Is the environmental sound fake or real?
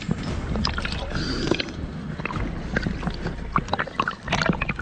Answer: real